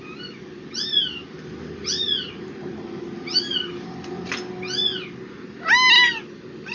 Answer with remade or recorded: recorded